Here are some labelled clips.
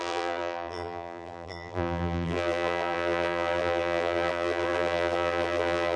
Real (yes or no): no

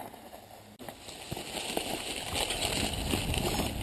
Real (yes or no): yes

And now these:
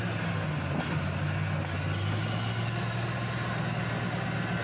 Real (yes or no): yes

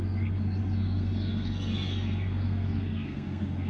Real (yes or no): no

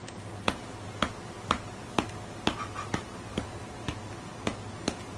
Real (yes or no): yes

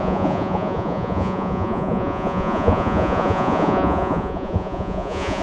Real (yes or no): no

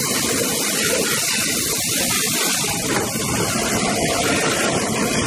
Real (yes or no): yes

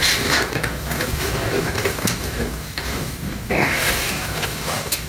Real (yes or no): no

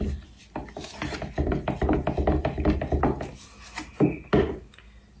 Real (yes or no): yes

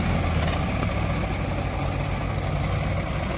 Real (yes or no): yes